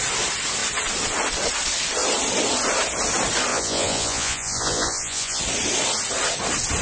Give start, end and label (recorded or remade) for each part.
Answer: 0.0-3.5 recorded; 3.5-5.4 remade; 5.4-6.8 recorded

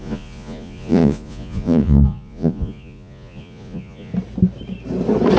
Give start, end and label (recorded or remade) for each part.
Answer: 0.0-4.1 remade; 4.1-5.4 recorded

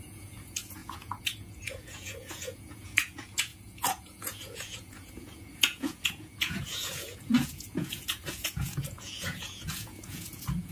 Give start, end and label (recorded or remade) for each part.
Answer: 0.0-10.7 remade

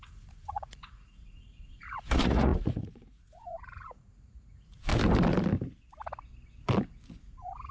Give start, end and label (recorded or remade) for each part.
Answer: 0.0-4.9 remade; 4.9-7.2 recorded; 7.2-7.7 remade

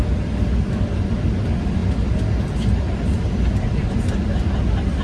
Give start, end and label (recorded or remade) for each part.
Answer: 0.0-5.0 recorded

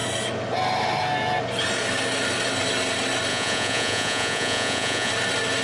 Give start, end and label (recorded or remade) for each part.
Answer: 0.0-3.3 recorded; 3.3-5.1 remade; 5.1-5.6 recorded